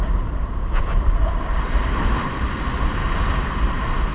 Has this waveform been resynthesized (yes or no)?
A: no